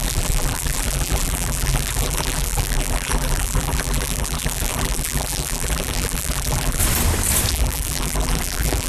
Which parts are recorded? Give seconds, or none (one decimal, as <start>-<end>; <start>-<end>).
6.8-7.5